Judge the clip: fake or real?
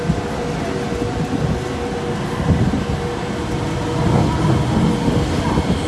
real